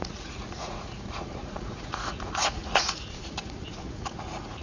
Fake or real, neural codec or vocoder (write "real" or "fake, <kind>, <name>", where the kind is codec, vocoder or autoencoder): fake, vocoder, Vocos